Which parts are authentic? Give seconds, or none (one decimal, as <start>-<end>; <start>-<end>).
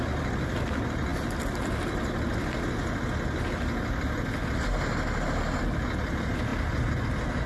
0.0-7.5